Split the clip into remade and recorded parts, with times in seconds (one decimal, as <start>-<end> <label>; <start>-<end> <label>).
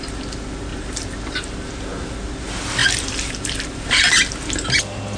0.0-0.7 recorded; 0.7-1.7 remade; 1.7-2.8 recorded; 2.8-4.1 remade; 4.1-5.2 recorded